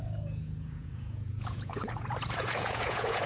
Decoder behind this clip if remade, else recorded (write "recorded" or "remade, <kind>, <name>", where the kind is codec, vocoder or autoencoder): remade, vocoder, Vocos